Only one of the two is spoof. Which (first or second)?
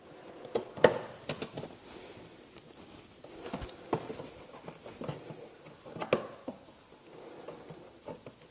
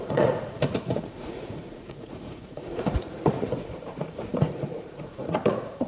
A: second